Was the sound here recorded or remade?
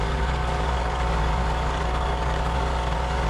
remade